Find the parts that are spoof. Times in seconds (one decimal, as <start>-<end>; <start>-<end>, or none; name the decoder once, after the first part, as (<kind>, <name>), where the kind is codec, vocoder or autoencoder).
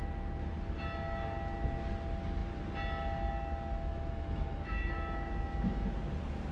3.7-5.9 (autoencoder, DAC-VAE)